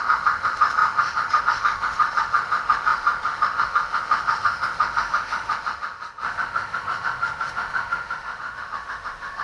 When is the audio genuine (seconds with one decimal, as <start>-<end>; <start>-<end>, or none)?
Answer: none

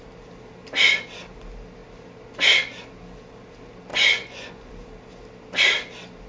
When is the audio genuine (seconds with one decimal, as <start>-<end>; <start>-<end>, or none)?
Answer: 0.0-3.9; 4.7-6.3

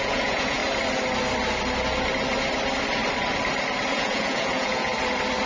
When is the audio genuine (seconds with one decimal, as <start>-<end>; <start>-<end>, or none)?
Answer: 0.6-3.9; 4.9-5.5